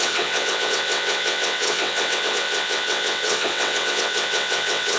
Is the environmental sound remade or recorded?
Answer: remade